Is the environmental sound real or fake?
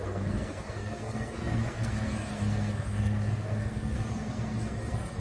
fake